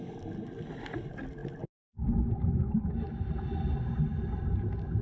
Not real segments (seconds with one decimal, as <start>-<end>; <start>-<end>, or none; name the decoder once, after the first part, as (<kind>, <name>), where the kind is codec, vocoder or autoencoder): none